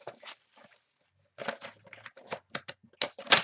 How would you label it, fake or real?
real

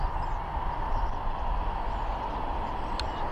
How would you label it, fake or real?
real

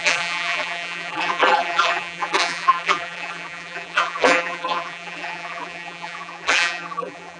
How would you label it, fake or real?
fake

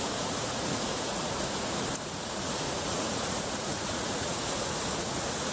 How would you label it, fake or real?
fake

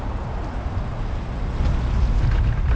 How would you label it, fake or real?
real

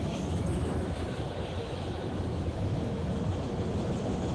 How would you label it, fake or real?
fake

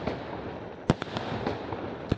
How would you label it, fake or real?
real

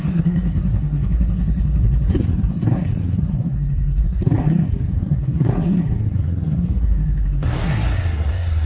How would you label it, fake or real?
fake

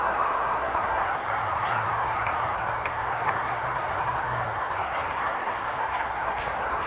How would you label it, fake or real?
fake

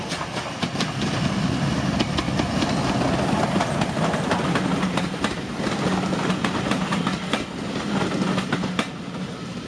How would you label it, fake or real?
real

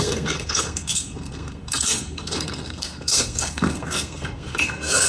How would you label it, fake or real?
fake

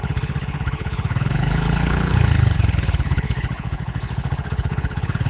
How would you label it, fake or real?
fake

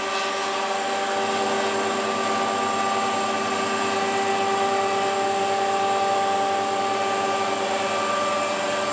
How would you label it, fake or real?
real